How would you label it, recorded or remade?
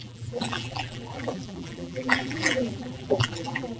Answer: remade